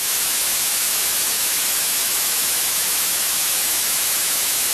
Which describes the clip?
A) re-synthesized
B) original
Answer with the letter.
A